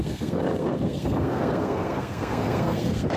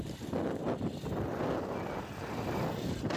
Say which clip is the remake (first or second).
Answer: first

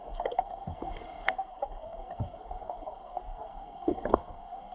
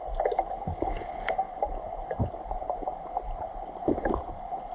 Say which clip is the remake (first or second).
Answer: first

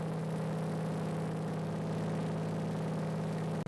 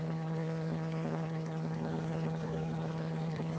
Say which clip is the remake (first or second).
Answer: second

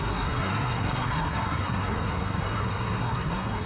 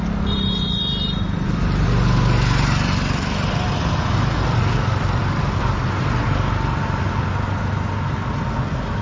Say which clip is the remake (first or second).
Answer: first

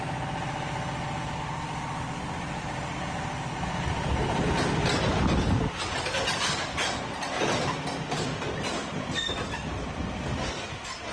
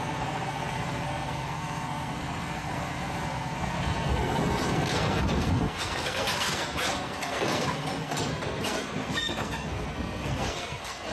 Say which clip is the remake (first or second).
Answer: second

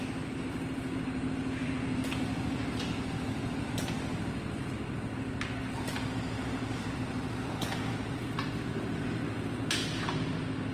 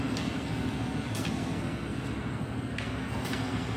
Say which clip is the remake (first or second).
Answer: second